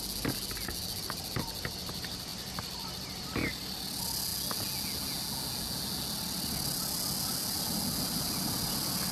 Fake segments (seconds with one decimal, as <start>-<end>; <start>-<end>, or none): none